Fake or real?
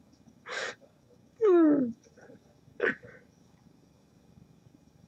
fake